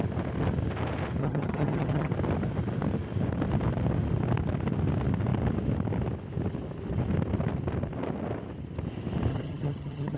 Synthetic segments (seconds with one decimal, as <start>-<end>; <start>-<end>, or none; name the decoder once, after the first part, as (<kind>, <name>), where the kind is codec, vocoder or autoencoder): 1.2-2.1 (vocoder, HiFi-GAN); 9.3-10.2